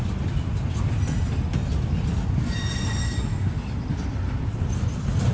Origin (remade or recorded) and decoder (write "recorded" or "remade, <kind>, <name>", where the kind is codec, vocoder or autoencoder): recorded